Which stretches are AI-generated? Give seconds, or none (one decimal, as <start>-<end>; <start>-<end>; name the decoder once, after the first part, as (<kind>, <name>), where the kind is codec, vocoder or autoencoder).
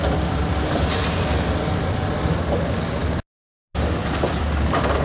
none